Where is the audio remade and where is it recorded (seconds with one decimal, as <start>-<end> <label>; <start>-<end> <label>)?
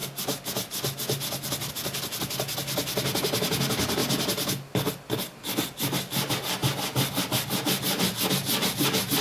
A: 0.0-9.2 recorded